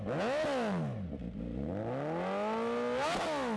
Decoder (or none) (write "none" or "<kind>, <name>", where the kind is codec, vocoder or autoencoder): none